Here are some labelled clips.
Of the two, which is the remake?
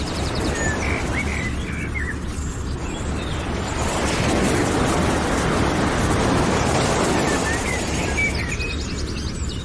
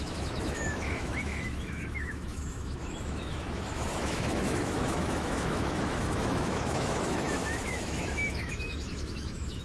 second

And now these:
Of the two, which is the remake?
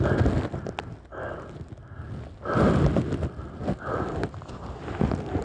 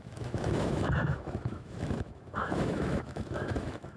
second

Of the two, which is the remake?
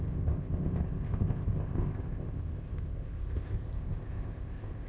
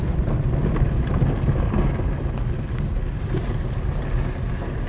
first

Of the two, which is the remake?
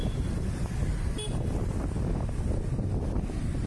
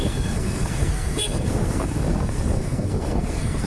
second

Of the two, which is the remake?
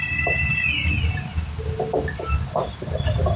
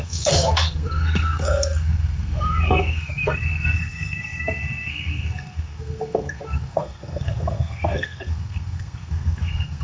second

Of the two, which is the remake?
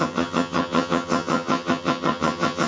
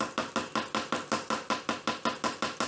first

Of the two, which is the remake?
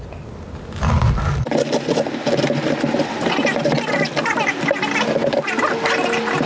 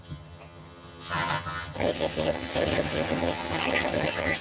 second